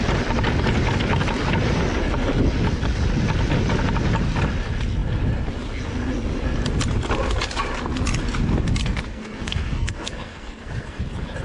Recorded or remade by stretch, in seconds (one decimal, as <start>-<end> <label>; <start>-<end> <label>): 0.0-8.8 recorded; 8.8-11.0 remade; 11.0-11.4 recorded